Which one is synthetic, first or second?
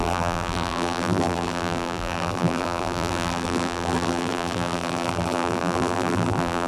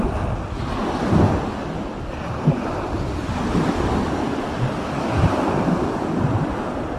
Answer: first